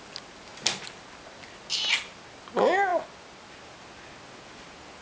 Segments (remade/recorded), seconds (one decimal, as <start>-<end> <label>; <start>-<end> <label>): 0.0-5.0 recorded